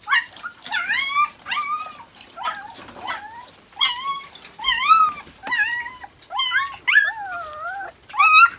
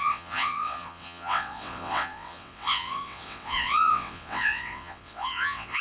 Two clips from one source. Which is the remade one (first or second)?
second